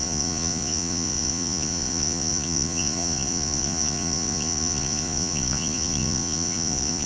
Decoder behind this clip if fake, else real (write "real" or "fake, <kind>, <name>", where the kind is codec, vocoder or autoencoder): fake, vocoder, Vocos